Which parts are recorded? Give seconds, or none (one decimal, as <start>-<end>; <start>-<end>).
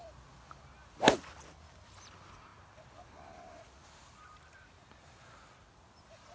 0.0-6.3